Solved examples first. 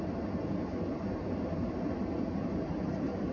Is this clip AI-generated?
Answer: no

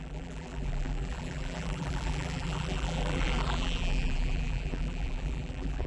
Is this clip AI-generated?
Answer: yes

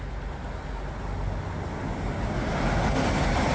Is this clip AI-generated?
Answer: no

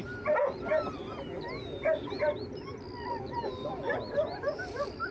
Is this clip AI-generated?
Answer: yes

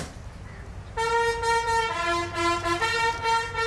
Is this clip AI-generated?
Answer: no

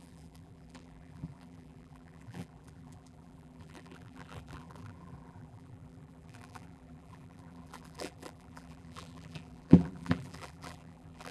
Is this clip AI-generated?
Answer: yes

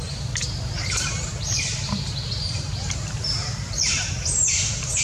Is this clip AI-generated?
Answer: yes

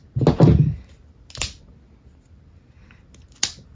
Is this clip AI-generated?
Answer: no